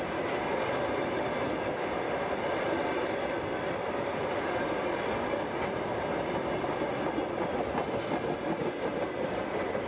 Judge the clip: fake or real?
real